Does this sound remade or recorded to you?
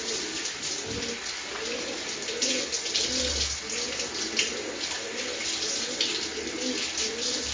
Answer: recorded